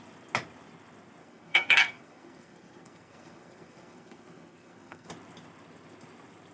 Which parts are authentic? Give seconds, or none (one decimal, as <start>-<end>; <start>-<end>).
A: 0.0-1.2; 5.1-6.5